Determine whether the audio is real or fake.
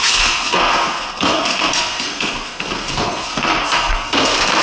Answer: fake